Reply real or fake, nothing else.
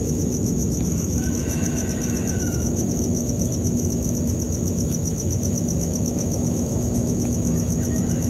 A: fake